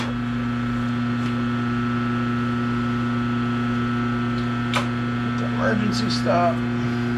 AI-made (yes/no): no